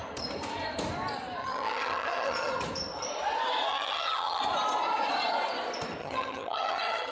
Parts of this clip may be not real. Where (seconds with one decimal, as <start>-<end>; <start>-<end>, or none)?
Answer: 1.4-2.5; 3.7-4.4; 6.0-7.1